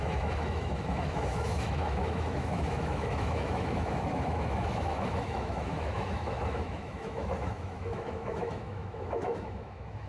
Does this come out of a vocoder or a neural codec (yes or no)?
yes